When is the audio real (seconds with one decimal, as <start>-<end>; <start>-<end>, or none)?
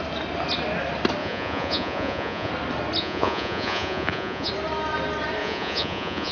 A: 0.0-1.2; 2.5-3.0; 4.5-5.4